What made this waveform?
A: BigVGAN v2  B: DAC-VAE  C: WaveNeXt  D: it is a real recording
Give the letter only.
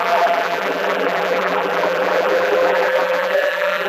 A